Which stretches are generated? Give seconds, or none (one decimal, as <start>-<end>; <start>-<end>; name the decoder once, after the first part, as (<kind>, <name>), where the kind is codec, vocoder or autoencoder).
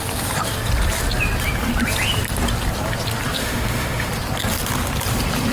3.4-4.1 (autoencoder, DAC-VAE)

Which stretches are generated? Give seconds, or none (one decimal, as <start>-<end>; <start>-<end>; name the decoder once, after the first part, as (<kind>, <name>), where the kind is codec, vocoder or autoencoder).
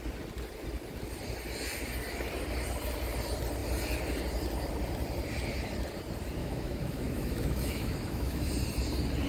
6.4-8.5 (autoencoder, DAC-VAE)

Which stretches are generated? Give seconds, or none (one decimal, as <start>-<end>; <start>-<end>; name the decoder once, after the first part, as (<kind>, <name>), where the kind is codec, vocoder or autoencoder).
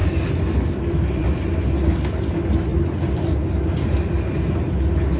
none